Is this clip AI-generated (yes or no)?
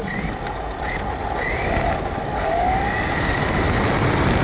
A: no